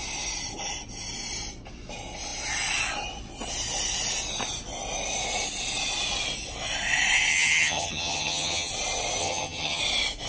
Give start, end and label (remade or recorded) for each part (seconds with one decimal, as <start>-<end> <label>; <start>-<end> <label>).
0.0-7.3 recorded; 7.3-8.7 remade; 8.7-9.2 recorded; 9.2-9.8 remade; 9.8-10.3 recorded